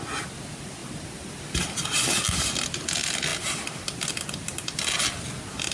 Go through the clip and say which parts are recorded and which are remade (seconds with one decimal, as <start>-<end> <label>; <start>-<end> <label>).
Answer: 0.0-5.7 recorded